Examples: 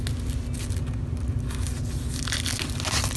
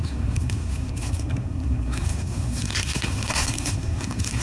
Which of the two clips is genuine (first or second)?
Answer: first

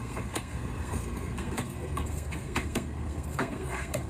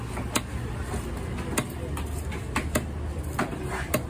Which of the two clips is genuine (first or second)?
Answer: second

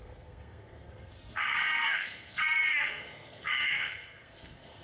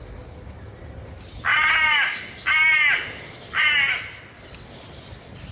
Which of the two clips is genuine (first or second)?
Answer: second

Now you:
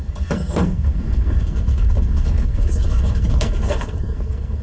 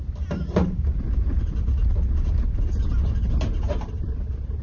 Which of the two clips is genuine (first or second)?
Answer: second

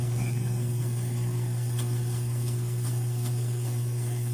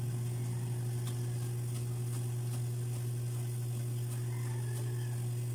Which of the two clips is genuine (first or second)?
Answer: second